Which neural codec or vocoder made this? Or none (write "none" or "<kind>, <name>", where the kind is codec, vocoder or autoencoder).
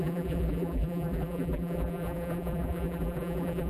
vocoder, BigVGAN v2